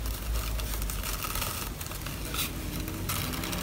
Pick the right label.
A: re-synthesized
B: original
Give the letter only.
B